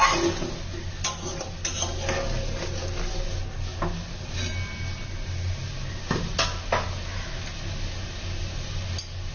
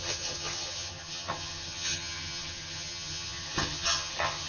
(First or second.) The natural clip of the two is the first